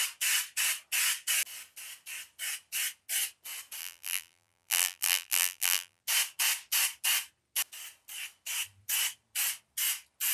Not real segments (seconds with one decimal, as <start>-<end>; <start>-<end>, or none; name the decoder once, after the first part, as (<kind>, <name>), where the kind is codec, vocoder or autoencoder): 3.8-6.0 (vocoder, BigVGAN v2)